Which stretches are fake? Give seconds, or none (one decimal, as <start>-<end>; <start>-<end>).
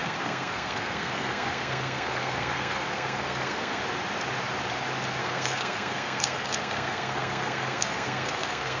0.0-3.8; 5.2-8.8